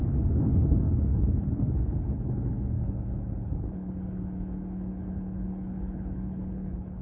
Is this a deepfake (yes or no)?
yes